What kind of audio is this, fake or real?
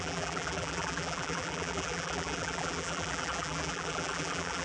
fake